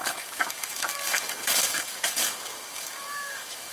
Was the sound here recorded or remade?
remade